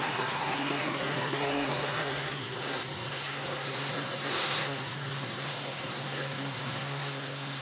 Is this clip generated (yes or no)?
yes